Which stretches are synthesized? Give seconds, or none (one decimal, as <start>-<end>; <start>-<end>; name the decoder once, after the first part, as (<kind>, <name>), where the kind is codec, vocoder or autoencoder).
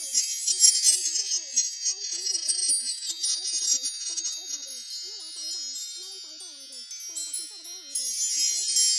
0.0-4.7 (vocoder, Vocos)